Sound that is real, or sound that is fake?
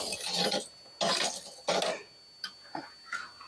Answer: real